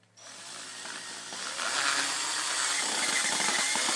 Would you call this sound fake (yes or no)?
no